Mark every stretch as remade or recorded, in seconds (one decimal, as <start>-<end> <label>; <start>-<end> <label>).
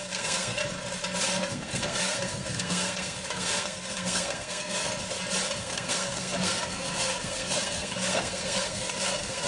0.0-0.6 remade; 0.6-1.2 recorded; 1.2-4.9 remade; 4.9-5.6 recorded; 5.6-9.5 remade